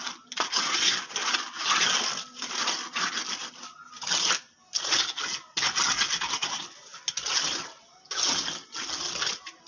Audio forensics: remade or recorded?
recorded